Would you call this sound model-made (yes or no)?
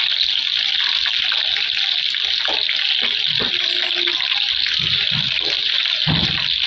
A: no